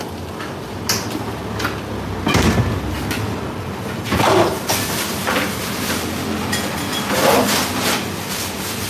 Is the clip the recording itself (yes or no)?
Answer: yes